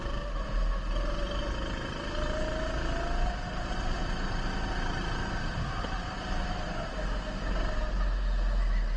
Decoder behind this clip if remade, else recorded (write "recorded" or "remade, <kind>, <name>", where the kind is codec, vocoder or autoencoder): recorded